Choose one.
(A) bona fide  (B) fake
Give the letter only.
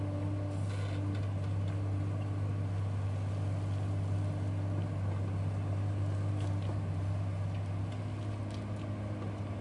A